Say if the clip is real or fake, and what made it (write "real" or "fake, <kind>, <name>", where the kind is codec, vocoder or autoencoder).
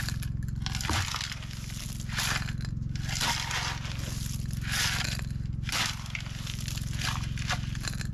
real